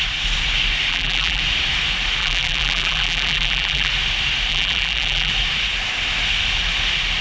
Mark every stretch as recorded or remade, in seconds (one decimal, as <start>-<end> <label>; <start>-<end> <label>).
0.0-0.9 recorded; 0.9-1.4 remade; 1.4-2.2 recorded; 2.2-3.9 remade; 3.9-4.5 recorded; 4.5-5.3 remade; 5.3-7.2 recorded

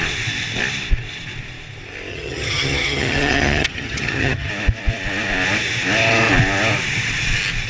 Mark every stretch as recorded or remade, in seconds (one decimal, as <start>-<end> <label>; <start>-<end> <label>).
0.0-2.1 recorded; 2.1-4.5 remade; 4.5-7.7 recorded